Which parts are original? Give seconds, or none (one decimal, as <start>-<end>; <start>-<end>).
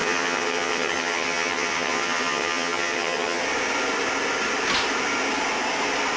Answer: 3.4-6.2